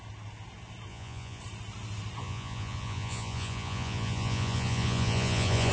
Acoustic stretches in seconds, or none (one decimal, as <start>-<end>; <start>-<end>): 0.0-0.9; 1.4-2.2